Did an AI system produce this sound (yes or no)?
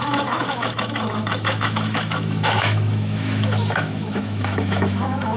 yes